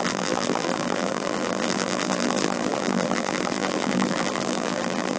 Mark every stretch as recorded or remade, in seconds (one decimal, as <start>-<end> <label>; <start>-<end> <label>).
0.0-5.2 remade